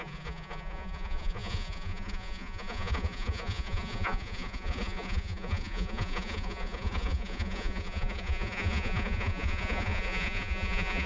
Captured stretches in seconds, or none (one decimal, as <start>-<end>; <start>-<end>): none